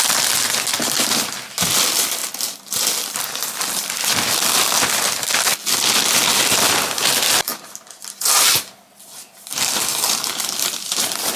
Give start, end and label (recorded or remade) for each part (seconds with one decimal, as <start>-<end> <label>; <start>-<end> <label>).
0.0-7.5 recorded; 7.5-9.5 remade; 9.5-11.4 recorded